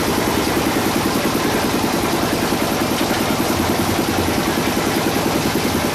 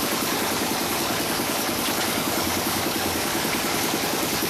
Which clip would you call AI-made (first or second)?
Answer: second